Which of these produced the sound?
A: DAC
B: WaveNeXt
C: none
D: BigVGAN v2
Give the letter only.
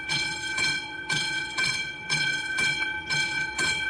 B